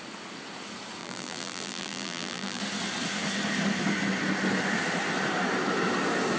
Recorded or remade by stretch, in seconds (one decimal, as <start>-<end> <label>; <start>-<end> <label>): 0.0-1.0 recorded; 1.0-2.6 remade; 2.6-6.4 recorded